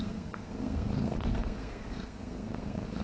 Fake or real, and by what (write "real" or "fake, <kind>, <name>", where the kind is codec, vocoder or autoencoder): fake, codec, SNAC